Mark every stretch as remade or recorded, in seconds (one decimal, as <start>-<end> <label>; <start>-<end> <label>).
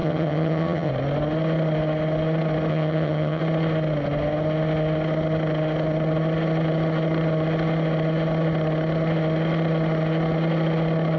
0.0-0.9 remade; 0.9-2.7 recorded; 2.7-3.4 remade; 3.4-11.2 recorded